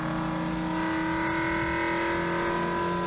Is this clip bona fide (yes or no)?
yes